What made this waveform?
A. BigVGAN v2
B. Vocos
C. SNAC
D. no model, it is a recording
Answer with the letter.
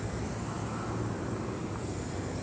D